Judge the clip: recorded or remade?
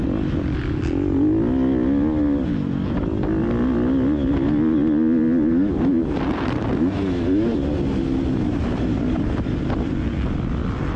recorded